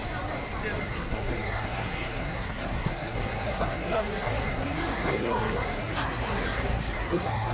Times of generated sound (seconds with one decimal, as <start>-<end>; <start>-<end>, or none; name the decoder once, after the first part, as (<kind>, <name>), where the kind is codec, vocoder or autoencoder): 0.8-7.5 (codec, SNAC)